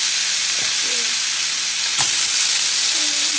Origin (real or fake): real